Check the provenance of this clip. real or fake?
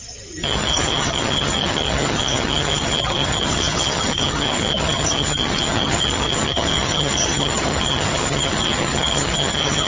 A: fake